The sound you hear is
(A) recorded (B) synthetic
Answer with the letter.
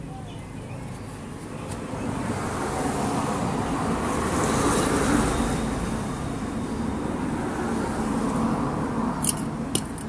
A